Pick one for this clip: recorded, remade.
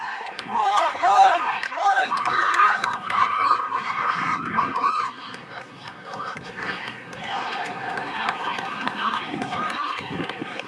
remade